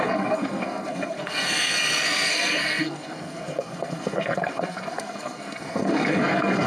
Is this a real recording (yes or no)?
no